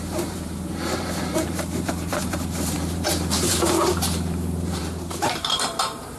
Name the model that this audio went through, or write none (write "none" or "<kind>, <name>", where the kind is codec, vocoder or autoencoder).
vocoder, BigVGAN v2